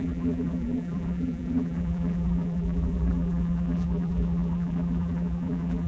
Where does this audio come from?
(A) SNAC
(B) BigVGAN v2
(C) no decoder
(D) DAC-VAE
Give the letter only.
B